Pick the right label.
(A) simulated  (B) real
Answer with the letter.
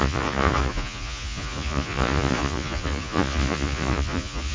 A